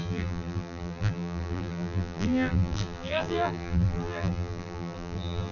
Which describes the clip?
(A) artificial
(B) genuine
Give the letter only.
A